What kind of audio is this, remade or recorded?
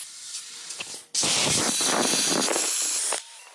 recorded